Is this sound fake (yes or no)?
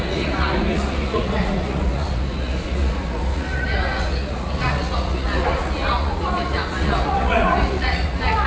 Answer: yes